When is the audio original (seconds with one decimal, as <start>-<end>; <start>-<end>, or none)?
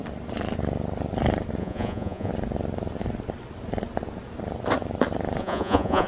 0.0-1.6; 2.3-5.4